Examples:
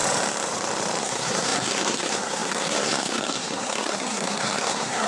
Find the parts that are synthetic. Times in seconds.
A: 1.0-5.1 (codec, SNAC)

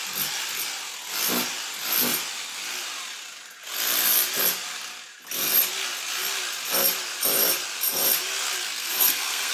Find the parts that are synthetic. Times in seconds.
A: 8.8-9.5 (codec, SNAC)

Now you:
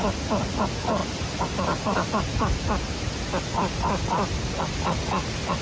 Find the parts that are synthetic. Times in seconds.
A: none